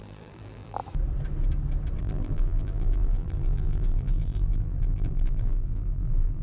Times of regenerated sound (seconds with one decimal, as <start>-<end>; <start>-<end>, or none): 0.0-0.8; 2.0-6.4